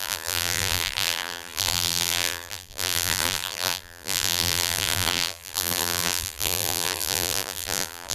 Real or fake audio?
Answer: fake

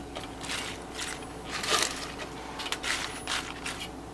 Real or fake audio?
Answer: real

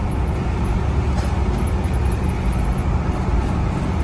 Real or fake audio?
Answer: real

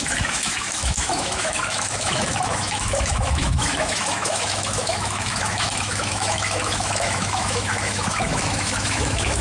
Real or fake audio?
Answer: fake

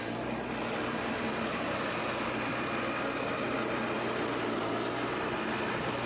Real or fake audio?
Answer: real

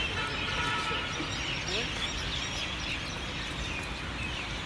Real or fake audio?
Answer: real